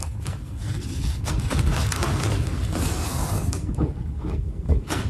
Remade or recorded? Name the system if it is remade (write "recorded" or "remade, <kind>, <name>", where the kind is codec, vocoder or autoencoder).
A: remade, codec, SNAC